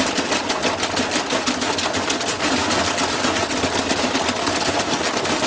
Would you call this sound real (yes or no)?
yes